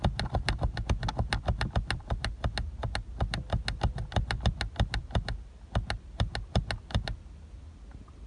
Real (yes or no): yes